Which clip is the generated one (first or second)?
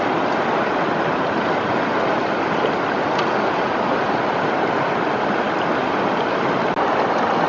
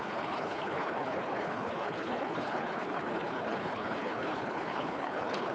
second